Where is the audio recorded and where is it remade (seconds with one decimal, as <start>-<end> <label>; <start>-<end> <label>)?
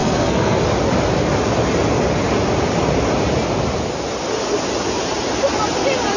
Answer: 0.0-0.6 remade; 0.6-6.2 recorded